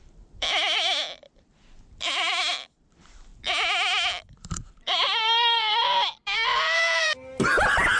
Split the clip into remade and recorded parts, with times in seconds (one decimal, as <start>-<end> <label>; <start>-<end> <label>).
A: 0.0-3.3 remade; 3.3-4.1 recorded; 4.1-8.0 remade